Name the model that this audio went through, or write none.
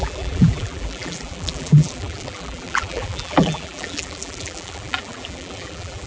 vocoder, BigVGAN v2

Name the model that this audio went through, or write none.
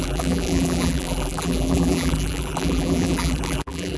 vocoder, BigVGAN v2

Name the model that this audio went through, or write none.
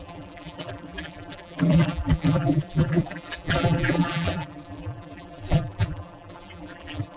vocoder, BigVGAN v2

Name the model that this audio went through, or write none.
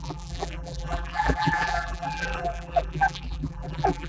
vocoder, BigVGAN v2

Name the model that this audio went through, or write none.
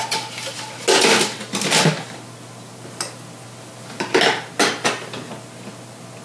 none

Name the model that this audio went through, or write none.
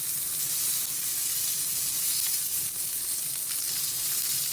none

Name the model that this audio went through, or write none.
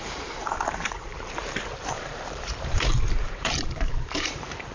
vocoder, BigVGAN v2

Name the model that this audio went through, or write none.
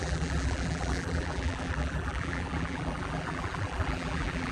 vocoder, BigVGAN v2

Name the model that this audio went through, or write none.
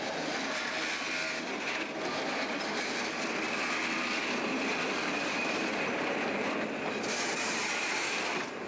vocoder, BigVGAN v2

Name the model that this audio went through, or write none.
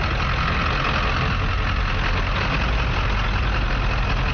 none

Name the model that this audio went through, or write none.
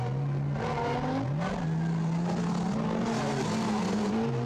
none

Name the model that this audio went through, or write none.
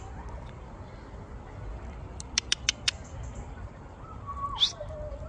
none